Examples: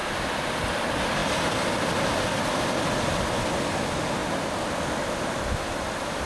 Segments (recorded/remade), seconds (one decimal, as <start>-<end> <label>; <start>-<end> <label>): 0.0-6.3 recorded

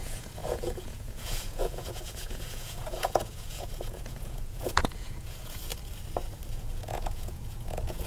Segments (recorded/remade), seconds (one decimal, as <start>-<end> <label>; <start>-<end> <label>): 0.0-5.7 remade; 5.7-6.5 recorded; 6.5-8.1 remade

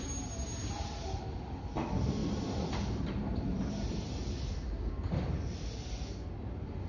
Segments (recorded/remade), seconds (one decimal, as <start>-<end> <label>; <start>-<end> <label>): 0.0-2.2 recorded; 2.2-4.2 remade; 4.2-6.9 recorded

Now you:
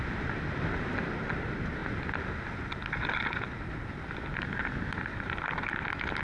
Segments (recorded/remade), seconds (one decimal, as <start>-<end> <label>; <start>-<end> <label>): 0.0-6.2 recorded

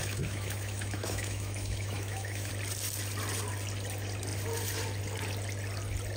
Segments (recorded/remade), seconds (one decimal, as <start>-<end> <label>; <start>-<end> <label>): 0.0-2.5 remade; 2.5-6.2 recorded

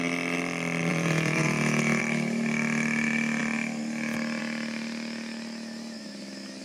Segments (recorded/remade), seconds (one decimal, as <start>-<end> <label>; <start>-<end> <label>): 0.0-0.9 recorded; 0.9-2.0 remade; 2.0-6.6 recorded